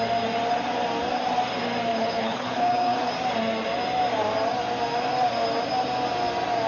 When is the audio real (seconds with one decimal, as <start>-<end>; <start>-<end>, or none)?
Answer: 0.0-1.9; 3.1-6.7